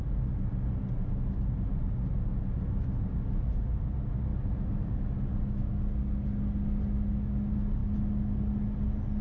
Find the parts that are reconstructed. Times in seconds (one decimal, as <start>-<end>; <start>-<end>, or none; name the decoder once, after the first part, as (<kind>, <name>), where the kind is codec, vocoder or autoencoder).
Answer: none